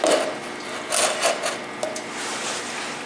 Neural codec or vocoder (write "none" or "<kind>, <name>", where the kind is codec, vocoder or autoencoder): none